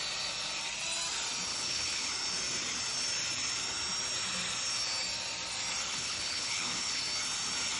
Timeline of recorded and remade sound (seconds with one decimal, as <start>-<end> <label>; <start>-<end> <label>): 0.0-1.5 recorded; 1.5-2.1 remade; 2.1-5.9 recorded; 5.9-7.0 remade; 7.0-7.8 recorded